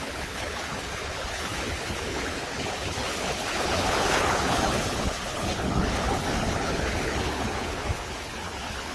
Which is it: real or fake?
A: fake